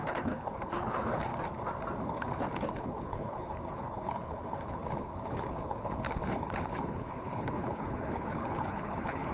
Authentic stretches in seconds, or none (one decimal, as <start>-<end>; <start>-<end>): 1.3-2.0